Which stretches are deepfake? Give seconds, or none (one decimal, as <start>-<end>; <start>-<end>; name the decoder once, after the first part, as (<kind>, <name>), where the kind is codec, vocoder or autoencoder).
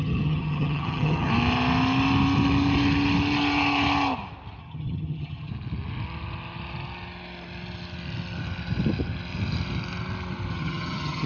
0.0-1.3 (vocoder, HiFi-GAN); 4.6-5.5; 10.5-11.3